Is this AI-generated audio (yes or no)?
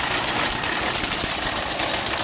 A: no